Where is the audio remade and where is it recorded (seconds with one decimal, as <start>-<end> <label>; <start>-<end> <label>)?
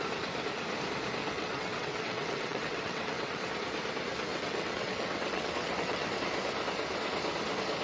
0.0-1.2 recorded; 1.2-3.4 remade; 3.4-4.3 recorded; 4.3-6.2 remade; 6.2-7.8 recorded